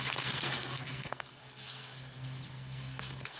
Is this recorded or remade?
remade